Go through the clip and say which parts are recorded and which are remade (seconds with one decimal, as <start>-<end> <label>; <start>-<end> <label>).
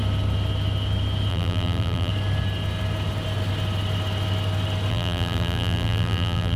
0.0-1.3 recorded; 1.3-2.1 remade; 2.1-4.9 recorded; 4.9-6.6 remade